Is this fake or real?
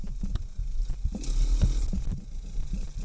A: real